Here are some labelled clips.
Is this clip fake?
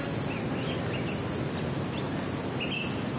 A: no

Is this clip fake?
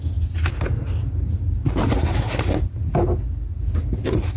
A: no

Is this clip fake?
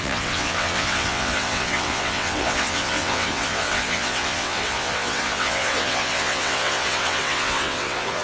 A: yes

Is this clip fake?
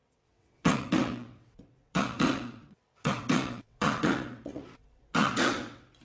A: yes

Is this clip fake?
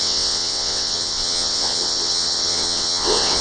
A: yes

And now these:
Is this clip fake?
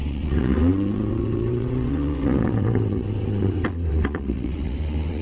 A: yes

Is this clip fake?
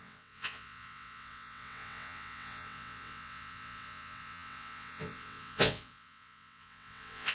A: yes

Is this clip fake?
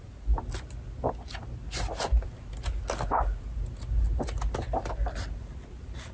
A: no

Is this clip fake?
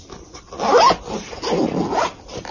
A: no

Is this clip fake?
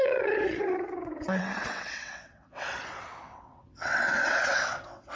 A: yes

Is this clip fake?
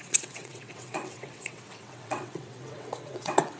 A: yes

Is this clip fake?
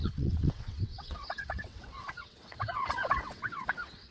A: yes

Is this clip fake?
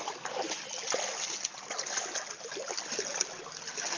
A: no